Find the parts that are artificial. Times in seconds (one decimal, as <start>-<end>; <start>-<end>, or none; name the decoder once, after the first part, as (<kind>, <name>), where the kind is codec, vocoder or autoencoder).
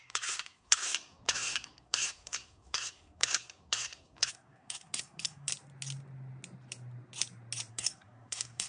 0.0-5.5 (codec, SNAC); 7.7-8.7